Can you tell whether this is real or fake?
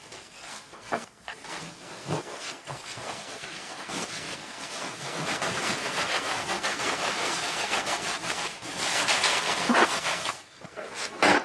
fake